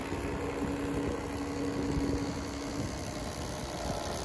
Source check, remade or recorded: recorded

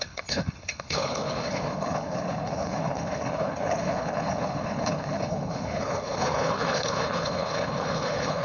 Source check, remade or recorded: remade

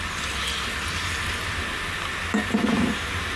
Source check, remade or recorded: recorded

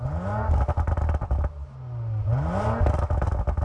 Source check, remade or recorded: recorded